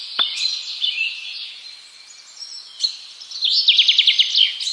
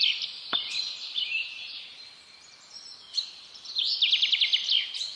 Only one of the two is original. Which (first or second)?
first